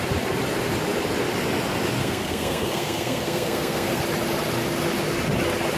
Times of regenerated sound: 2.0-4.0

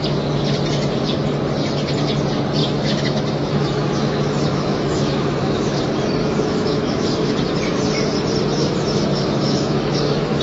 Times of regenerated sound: 2.6-5.8; 6.2-7.3; 8.6-10.4